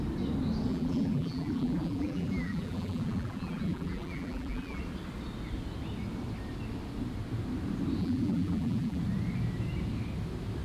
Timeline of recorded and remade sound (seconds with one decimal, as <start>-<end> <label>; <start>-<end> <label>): 0.0-0.7 recorded; 0.7-4.8 remade; 4.8-8.0 recorded; 8.0-9.0 remade; 9.0-10.6 recorded